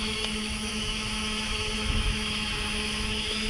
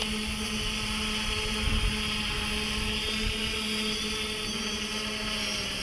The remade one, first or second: first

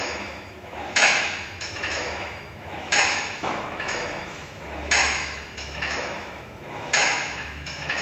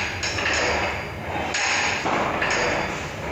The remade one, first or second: first